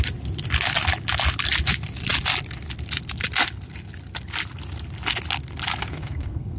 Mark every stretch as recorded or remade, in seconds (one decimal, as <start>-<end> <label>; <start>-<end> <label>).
0.0-5.9 recorded; 5.9-6.6 remade